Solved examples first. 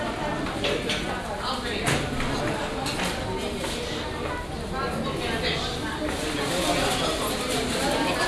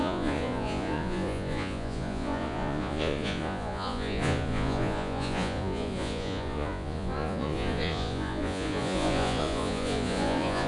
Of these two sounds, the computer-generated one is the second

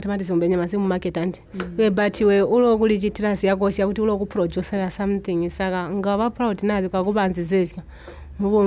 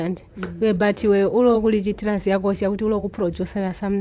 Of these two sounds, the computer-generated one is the second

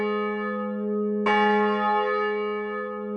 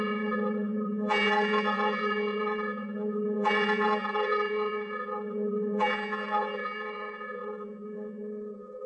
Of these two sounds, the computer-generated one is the second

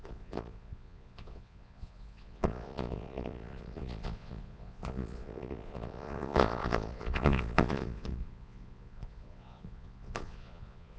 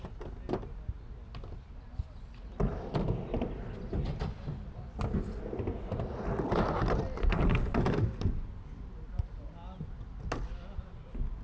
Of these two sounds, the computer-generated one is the first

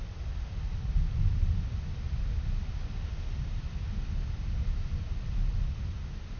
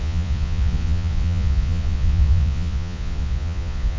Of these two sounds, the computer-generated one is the second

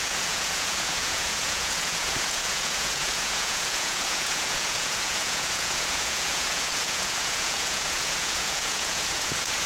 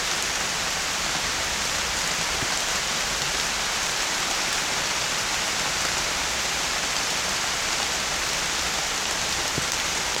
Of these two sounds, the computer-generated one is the first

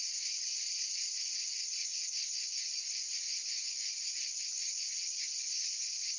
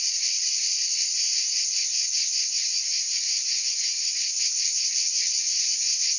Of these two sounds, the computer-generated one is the second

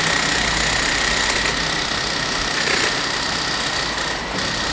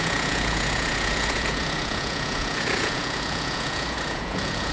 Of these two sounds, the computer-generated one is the second